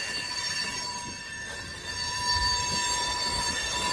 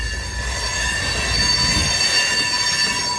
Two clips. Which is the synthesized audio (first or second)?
first